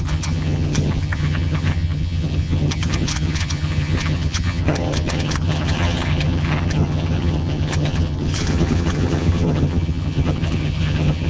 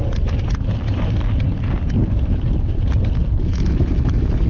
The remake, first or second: first